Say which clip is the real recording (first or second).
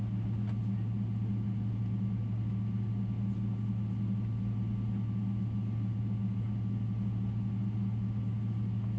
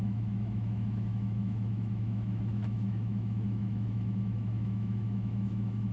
first